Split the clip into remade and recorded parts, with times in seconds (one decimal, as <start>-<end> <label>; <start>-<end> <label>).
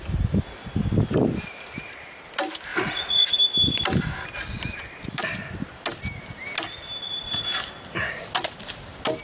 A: 0.0-2.7 recorded; 2.7-3.4 remade; 3.4-9.2 recorded